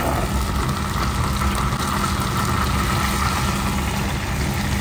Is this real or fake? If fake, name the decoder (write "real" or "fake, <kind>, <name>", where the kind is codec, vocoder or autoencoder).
real